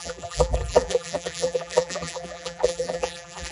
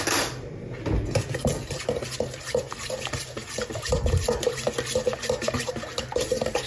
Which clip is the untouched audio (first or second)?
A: second